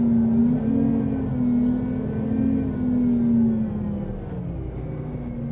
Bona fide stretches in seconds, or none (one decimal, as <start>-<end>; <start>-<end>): 0.0-5.5